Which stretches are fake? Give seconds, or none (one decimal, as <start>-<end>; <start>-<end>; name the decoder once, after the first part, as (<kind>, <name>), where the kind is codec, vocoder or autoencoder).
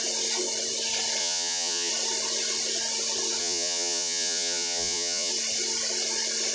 1.2-1.9 (vocoder, Vocos); 3.4-5.3